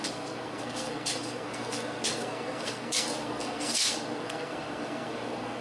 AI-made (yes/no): yes